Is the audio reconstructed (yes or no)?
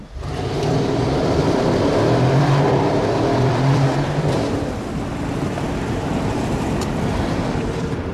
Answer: yes